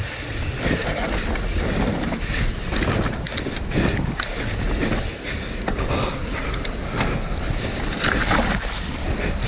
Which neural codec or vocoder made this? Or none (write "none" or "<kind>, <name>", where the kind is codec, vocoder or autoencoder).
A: none